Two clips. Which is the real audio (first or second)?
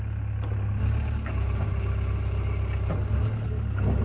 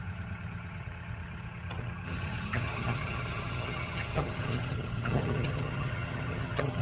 first